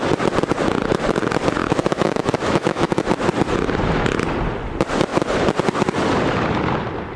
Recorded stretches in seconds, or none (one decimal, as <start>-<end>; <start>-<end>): 0.0-1.6; 3.0-7.2